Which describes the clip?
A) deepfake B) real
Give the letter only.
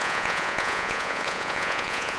A